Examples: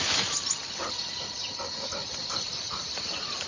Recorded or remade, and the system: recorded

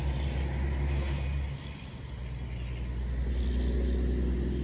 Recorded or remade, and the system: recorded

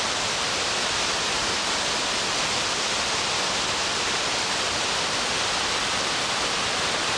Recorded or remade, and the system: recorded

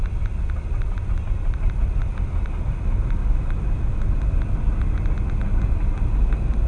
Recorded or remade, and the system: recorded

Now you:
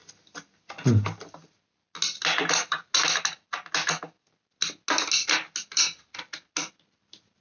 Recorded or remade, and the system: recorded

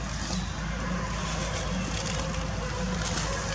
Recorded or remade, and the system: recorded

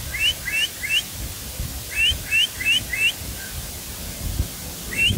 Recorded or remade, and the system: recorded